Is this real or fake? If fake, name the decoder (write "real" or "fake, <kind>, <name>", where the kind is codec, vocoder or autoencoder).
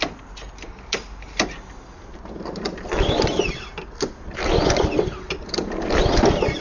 real